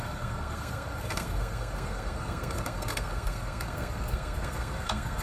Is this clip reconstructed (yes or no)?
yes